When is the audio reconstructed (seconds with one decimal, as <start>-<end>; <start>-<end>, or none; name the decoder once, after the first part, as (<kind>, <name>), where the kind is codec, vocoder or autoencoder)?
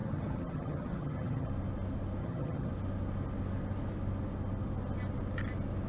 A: 0.0-1.5 (vocoder, HiFi-GAN); 2.2-2.7